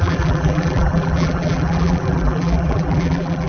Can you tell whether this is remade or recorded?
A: remade